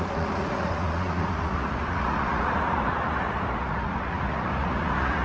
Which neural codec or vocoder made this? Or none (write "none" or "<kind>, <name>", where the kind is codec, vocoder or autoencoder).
vocoder, Vocos